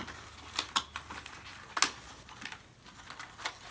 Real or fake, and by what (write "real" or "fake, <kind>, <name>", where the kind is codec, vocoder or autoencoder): real